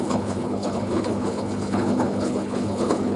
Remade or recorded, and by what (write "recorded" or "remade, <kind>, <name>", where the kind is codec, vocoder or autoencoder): remade, codec, HILCodec